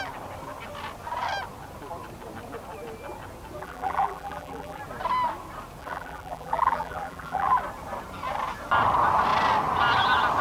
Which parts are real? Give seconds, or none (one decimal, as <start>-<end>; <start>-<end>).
0.0-3.6; 4.8-5.8; 7.6-10.4